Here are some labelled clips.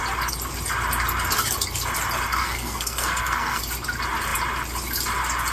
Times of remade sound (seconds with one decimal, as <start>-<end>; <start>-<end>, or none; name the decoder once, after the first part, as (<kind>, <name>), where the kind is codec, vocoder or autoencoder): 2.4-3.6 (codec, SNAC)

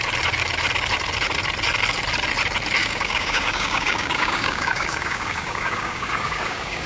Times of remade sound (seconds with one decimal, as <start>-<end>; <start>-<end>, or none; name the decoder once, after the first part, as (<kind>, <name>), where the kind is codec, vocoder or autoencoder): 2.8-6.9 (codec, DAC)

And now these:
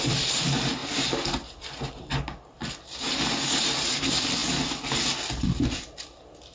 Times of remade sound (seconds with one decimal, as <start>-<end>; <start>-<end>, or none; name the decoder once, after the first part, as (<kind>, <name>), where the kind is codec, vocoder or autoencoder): none

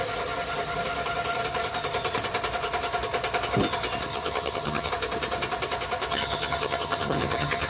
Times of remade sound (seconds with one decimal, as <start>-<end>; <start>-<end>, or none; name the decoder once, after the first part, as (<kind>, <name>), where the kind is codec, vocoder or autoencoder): 4.1-4.9 (vocoder, HiFi-GAN); 6.1-7.7

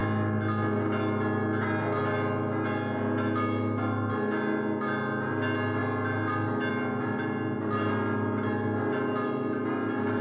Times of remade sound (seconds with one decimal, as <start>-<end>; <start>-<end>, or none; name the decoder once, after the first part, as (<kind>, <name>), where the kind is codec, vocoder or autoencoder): none